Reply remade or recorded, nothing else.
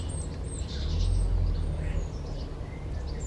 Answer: recorded